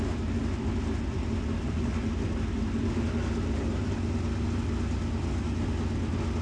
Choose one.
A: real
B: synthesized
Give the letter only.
A